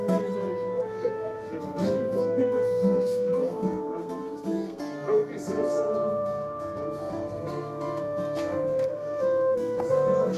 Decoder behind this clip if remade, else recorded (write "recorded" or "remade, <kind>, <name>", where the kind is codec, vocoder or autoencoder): remade, codec, SNAC